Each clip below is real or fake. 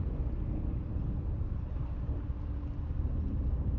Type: real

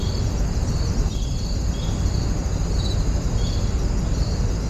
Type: real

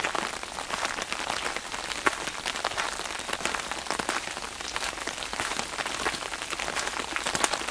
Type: real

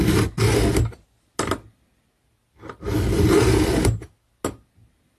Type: real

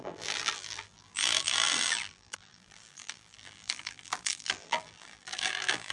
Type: fake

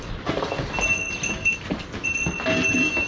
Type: real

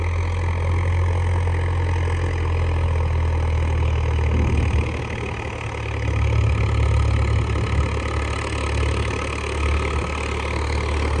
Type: real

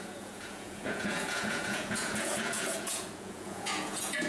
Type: fake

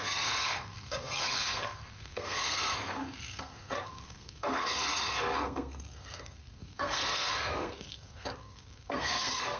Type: fake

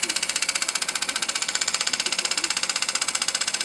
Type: fake